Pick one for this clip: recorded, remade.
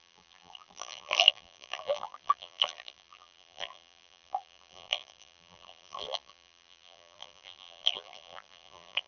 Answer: remade